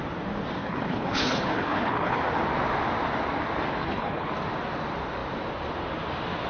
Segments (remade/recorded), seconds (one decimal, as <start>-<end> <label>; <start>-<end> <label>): 0.0-0.6 recorded; 0.6-2.2 remade; 2.2-3.8 recorded; 3.8-4.3 remade; 4.3-6.5 recorded